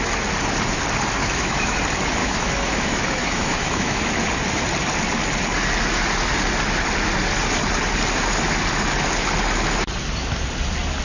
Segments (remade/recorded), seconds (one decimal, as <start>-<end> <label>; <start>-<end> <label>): 0.0-1.2 recorded; 1.2-1.8 remade; 1.8-2.2 recorded; 2.2-4.0 remade; 4.0-11.0 recorded